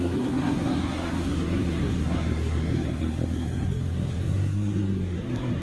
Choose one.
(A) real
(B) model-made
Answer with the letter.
B